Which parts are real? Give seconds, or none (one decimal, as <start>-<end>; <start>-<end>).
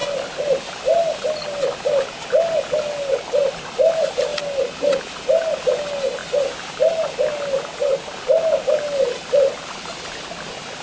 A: 0.0-10.8